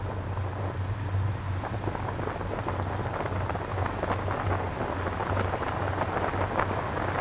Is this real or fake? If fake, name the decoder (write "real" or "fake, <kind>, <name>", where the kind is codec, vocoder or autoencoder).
real